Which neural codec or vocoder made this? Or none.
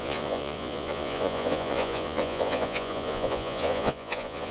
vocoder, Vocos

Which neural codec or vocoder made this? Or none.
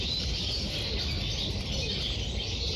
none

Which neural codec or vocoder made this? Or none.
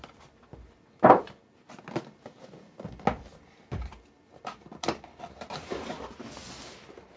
none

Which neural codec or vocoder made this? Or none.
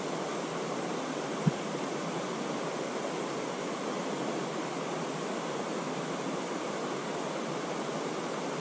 none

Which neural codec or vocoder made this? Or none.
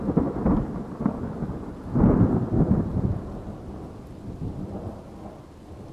none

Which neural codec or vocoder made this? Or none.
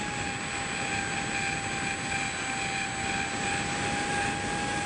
none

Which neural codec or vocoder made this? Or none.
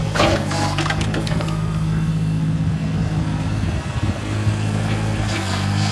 codec, SNAC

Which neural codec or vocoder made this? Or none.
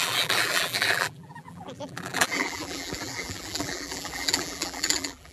vocoder, BigVGAN v2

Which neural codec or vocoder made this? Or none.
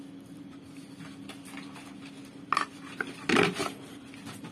none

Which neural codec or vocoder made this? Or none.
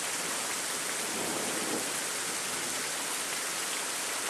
none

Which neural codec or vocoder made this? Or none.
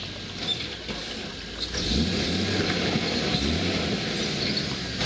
none